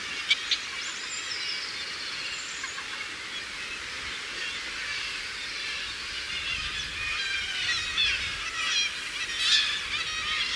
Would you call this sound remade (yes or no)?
no